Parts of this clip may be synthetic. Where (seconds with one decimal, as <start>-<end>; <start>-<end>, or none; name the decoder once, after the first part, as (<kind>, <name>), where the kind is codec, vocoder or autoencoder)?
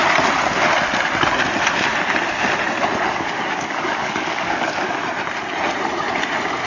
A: 3.1-5.0 (codec, DAC)